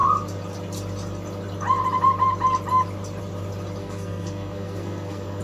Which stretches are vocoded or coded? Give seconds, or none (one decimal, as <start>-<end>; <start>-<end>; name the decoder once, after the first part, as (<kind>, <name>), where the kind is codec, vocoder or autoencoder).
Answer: 3.8-5.4 (codec, SNAC)